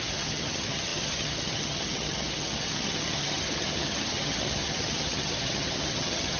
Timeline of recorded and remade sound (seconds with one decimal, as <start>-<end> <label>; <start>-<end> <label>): 0.0-6.4 remade